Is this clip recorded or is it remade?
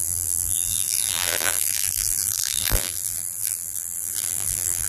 remade